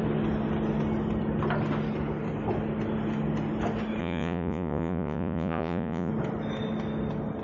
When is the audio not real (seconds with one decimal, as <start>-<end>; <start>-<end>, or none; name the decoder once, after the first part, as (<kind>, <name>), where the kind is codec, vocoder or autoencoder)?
4.0-6.1 (vocoder, Vocos)